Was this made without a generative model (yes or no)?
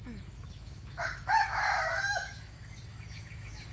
no